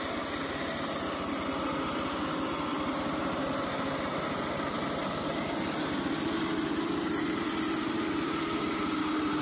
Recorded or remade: recorded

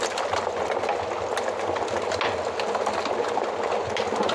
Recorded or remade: recorded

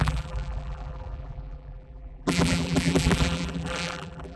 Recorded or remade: remade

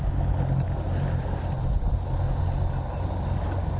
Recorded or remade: recorded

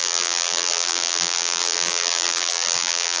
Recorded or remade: remade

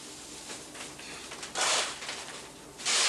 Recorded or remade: recorded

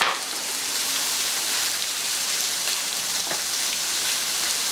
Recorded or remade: remade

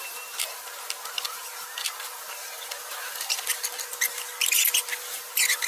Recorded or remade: recorded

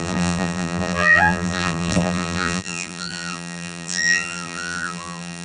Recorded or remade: remade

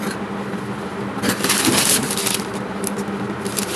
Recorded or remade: recorded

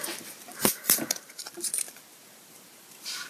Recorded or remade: remade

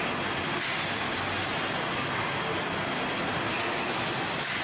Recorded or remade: recorded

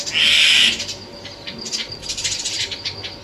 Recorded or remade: recorded